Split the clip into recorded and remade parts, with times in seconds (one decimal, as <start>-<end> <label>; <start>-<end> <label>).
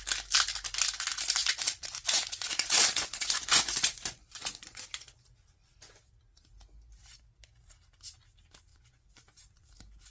0.0-1.4 recorded; 1.4-6.1 remade; 6.1-8.7 recorded; 8.7-10.1 remade